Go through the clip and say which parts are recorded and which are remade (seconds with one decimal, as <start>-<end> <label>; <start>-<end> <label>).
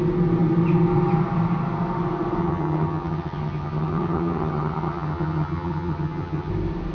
0.0-2.4 recorded; 2.4-6.5 remade; 6.5-6.9 recorded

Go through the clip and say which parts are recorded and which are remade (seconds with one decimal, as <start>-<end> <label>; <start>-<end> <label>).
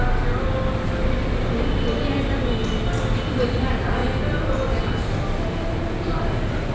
0.0-6.7 recorded